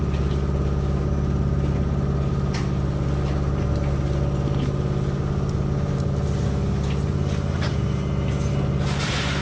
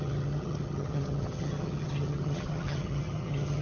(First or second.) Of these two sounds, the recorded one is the first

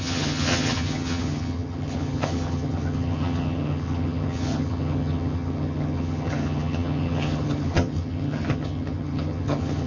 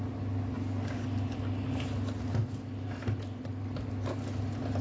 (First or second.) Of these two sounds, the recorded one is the second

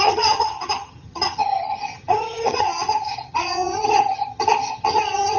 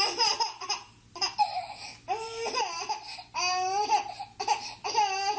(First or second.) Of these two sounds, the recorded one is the second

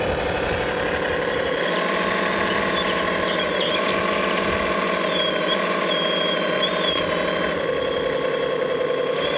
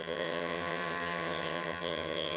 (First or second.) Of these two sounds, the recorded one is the first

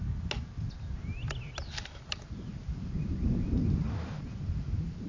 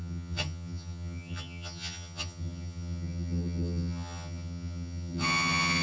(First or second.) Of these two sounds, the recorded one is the first